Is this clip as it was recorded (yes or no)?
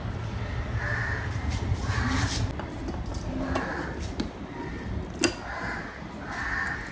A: yes